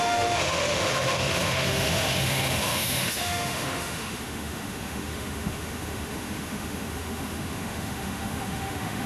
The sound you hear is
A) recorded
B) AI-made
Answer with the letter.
B